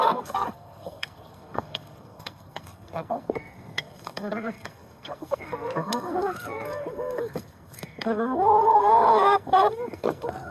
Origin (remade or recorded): remade